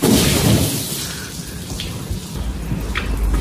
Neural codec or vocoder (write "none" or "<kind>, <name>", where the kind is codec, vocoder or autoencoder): none